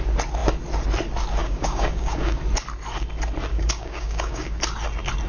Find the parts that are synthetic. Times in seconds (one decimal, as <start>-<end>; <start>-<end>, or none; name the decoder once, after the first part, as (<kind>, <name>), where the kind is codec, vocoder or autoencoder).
1.4-2.4 (codec, DAC); 3.5-4.6